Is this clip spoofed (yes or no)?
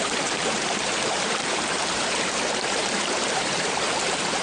yes